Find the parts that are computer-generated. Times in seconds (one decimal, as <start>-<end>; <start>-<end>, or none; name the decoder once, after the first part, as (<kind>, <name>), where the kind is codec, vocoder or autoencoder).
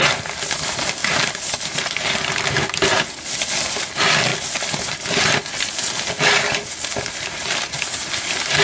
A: none